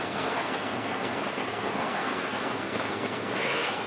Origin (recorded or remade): remade